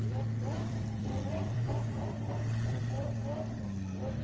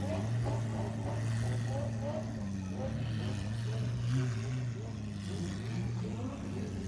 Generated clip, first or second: first